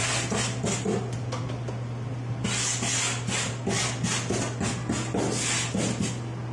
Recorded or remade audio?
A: recorded